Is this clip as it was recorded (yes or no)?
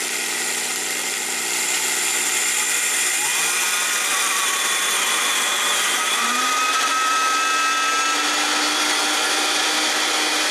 yes